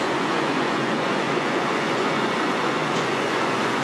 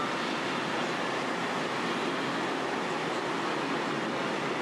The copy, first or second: first